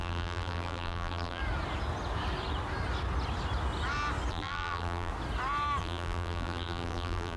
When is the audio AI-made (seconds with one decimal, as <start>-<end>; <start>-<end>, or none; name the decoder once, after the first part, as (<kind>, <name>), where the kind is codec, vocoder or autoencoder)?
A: 0.0-1.4 (vocoder, BigVGAN v2); 4.3-5.1; 5.8-7.4